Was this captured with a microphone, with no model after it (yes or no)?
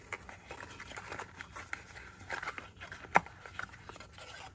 yes